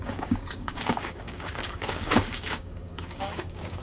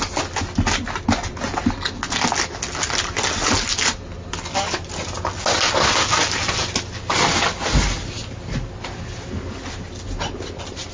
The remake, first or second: first